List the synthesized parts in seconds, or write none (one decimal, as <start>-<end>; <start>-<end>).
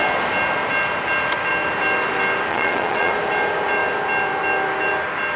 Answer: 2.5-3.1